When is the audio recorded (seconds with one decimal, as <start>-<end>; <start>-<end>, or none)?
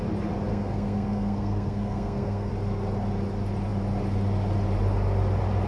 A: 0.0-0.5; 2.5-5.7